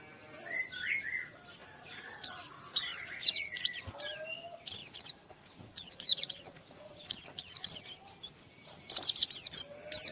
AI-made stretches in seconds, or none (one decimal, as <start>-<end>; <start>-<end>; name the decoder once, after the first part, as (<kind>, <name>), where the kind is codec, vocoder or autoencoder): 1.6-2.5 (vocoder, Vocos); 2.9-3.8; 4.8-7.8